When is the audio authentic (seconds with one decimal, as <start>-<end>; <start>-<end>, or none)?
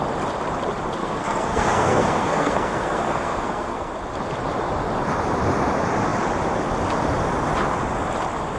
0.0-1.0; 3.9-8.6